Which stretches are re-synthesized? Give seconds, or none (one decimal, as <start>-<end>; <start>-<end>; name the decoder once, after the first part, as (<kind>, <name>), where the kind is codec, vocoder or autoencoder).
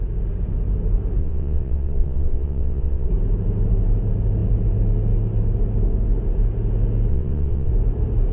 1.2-3.1 (vocoder, WaveNeXt); 7.1-7.7